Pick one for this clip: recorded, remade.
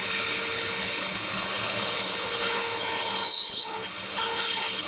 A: remade